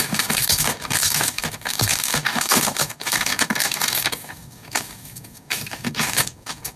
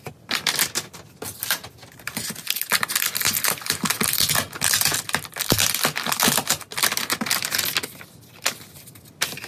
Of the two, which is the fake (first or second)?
first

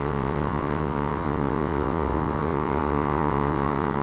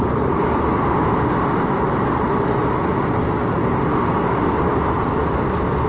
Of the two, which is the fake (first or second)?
first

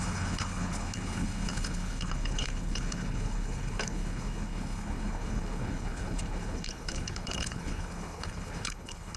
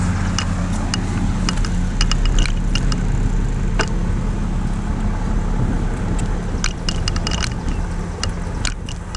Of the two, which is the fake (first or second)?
first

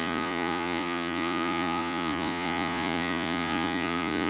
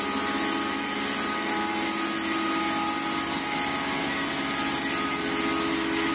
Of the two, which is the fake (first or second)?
first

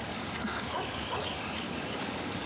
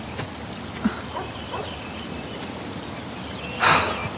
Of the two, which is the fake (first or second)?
first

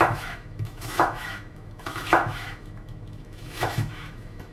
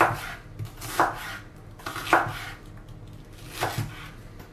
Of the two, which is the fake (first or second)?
first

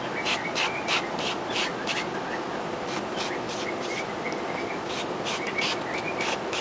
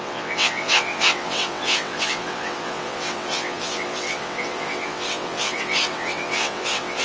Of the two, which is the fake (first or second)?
second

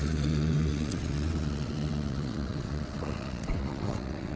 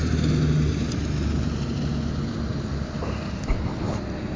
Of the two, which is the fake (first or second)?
first